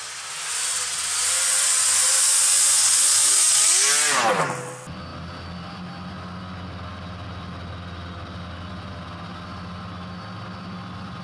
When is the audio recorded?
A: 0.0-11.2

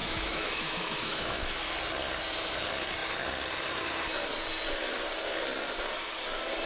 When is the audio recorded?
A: 1.6-6.7

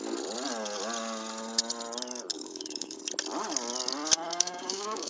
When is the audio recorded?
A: 0.0-2.3; 3.0-4.3

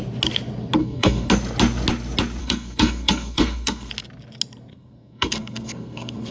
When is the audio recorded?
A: 0.0-0.8; 1.3-2.4; 3.9-4.7

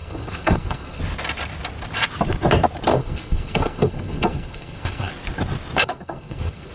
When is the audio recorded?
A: 1.0-2.9; 5.1-5.8

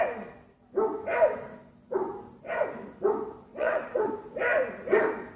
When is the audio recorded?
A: 0.0-3.5; 4.1-5.4

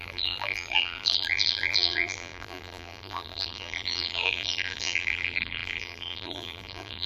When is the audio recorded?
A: none